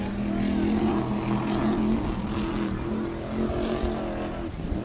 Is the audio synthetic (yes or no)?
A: no